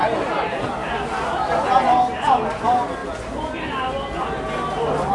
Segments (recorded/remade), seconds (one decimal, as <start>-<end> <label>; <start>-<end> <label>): 0.0-5.1 recorded